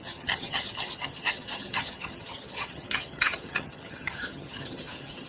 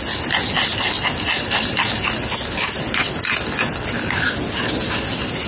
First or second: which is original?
second